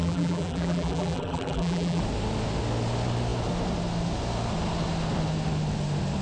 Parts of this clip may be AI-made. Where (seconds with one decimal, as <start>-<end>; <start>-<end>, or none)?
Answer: 0.0-2.0